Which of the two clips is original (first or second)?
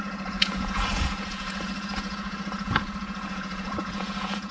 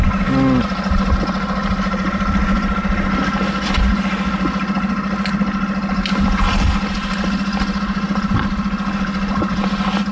second